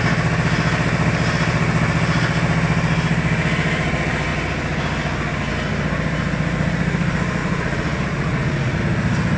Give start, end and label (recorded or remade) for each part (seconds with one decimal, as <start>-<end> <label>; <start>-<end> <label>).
0.0-7.4 recorded; 7.4-8.8 remade; 8.8-9.4 recorded